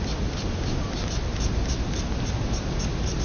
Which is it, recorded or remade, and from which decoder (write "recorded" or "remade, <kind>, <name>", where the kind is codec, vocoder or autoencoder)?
recorded